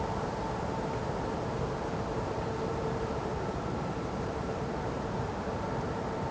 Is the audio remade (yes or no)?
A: yes